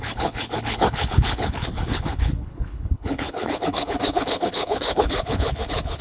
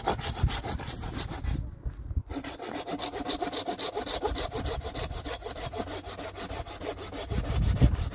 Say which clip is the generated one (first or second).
first